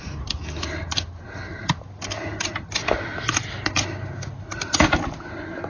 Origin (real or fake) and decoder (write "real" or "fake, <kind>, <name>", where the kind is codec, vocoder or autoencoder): real